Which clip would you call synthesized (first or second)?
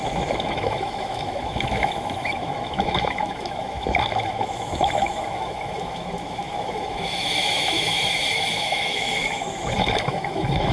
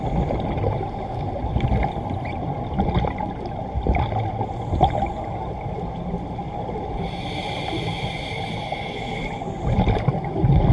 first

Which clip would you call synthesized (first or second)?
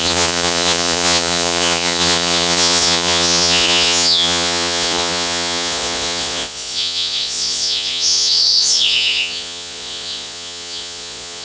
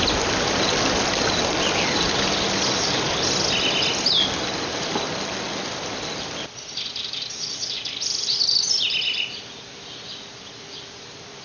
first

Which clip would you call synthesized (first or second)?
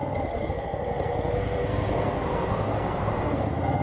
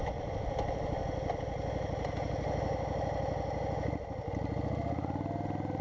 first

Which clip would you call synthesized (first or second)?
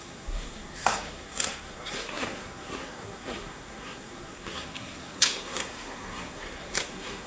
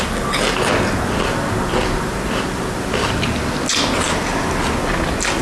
first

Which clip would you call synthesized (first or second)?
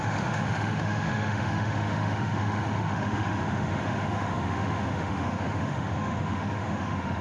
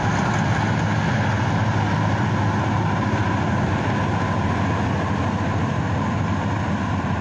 first